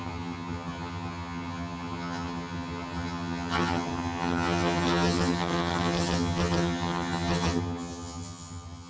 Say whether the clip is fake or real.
fake